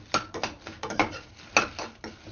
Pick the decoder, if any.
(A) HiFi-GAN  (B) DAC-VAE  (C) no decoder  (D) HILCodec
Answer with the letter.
C